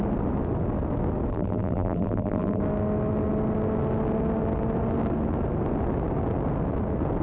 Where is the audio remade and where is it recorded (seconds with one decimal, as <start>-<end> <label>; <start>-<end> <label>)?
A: 0.0-1.3 recorded; 1.3-2.6 remade; 2.6-7.2 recorded